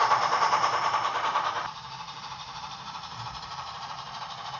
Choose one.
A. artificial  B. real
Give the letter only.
A